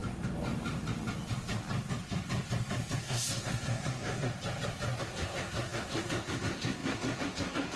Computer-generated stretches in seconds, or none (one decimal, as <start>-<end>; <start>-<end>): 3.0-4.3; 5.0-7.8